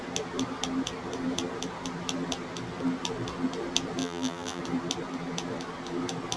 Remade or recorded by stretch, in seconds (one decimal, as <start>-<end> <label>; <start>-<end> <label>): 0.0-4.0 recorded; 4.0-4.6 remade; 4.6-6.4 recorded